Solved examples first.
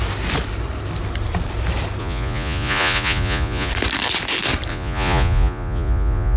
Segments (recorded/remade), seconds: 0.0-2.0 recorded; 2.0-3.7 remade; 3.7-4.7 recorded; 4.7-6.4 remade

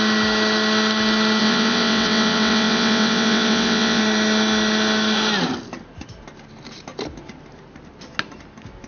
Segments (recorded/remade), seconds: 0.0-1.4 recorded; 1.4-4.0 remade; 4.0-8.9 recorded

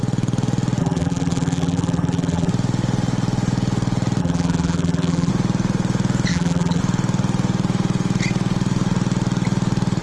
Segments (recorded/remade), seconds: 0.0-0.8 recorded; 0.8-2.5 remade; 2.5-4.2 recorded; 4.2-5.3 remade; 5.3-6.3 recorded; 6.3-6.8 remade; 6.8-10.0 recorded